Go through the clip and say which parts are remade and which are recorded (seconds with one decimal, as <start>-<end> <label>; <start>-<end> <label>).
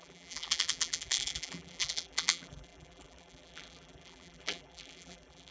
0.0-5.5 remade